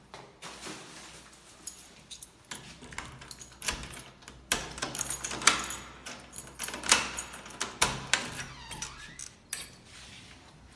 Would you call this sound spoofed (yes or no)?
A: no